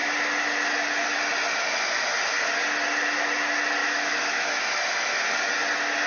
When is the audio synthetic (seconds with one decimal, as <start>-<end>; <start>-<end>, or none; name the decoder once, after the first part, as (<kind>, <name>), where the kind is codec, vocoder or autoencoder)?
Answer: 3.8-4.6 (autoencoder, DAC-VAE)

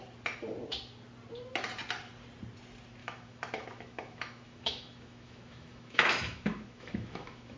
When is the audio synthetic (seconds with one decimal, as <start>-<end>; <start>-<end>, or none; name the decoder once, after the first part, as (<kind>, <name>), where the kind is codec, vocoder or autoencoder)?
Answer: 3.0-7.6 (autoencoder, DAC-VAE)